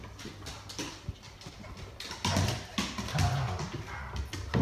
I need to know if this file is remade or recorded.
recorded